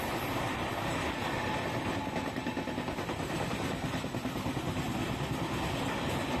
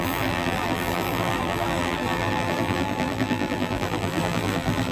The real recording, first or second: first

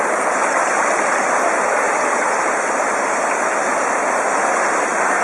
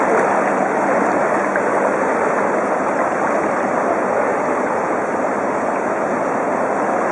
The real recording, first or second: second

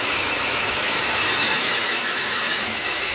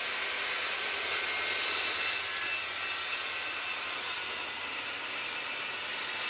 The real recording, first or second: second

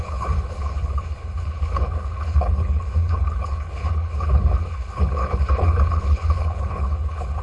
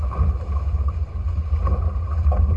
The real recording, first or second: second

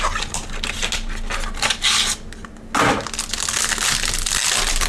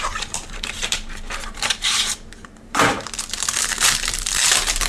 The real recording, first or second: first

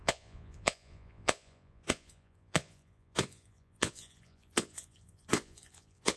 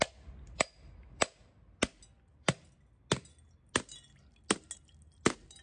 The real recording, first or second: second